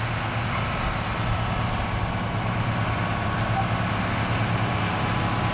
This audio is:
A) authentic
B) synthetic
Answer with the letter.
A